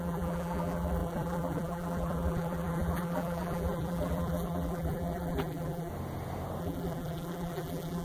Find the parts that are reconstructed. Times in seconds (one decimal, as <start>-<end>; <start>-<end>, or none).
0.0-5.9; 6.6-8.0